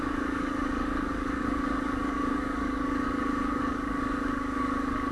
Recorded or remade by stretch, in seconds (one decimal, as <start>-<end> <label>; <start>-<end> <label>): 0.0-5.1 remade